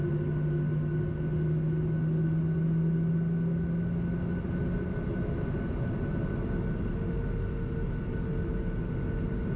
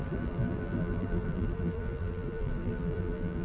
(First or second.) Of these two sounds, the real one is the first